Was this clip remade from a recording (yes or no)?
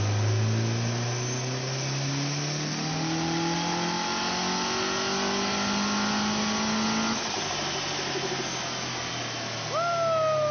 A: no